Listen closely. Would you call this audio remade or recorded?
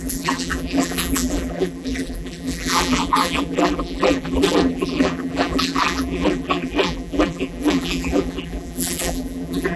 remade